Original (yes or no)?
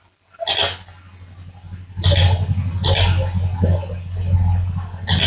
yes